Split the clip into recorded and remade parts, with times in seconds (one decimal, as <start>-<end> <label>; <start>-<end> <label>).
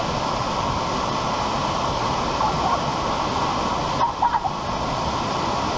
0.0-5.8 recorded